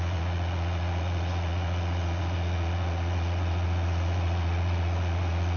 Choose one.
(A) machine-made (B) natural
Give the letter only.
A